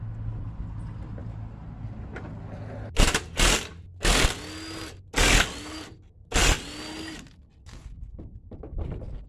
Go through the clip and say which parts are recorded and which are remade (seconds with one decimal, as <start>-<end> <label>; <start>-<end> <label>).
0.0-9.3 recorded